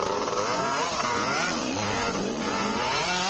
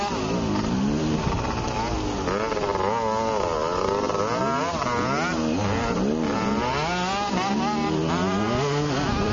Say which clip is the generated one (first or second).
first